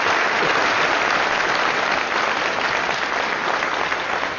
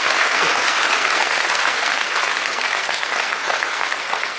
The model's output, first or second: second